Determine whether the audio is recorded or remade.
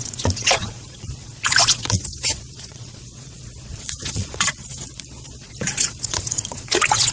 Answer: remade